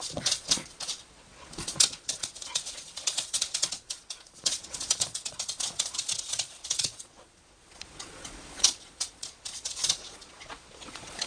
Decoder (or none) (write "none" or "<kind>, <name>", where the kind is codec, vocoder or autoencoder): vocoder, Vocos